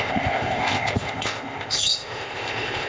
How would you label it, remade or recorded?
remade